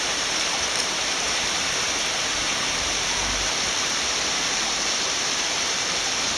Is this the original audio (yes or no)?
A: no